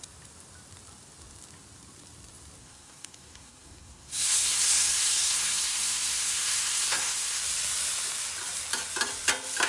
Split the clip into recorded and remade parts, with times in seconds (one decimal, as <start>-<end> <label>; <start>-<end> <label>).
0.0-2.6 recorded; 2.6-7.4 remade; 7.4-9.7 recorded